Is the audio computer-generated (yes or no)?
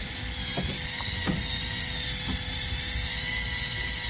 no